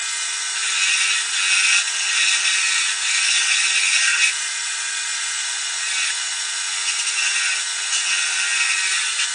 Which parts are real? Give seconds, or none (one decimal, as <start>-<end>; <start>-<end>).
0.0-4.1; 6.3-9.3